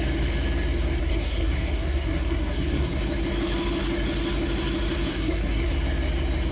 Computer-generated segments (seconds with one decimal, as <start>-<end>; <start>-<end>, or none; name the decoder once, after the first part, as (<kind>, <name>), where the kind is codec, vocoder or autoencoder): 1.0-2.9 (codec, SNAC); 5.1-5.7